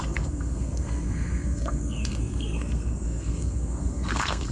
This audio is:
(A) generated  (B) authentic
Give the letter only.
A